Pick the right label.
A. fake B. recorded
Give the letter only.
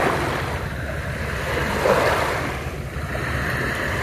B